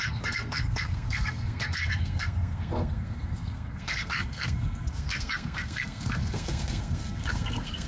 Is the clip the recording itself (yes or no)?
no